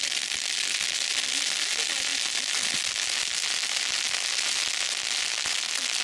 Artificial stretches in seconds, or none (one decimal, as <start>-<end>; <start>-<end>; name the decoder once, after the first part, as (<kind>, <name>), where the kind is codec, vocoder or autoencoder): none

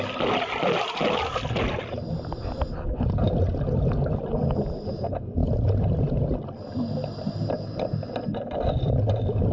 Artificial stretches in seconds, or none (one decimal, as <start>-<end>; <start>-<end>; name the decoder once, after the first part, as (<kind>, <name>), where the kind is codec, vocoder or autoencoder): none